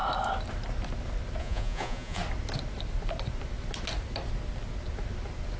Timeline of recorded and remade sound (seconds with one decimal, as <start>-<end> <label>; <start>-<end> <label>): 0.0-1.4 recorded; 1.4-2.2 remade; 2.2-5.6 recorded